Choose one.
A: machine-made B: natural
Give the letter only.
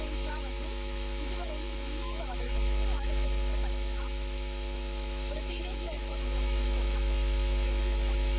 A